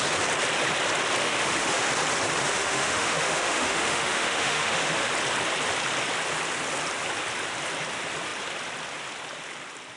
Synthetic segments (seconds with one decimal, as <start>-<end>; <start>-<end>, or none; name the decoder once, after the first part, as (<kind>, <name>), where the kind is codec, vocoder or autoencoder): 1.2-1.9 (autoencoder, DAC-VAE); 2.4-5.1